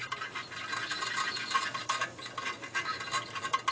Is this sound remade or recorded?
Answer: recorded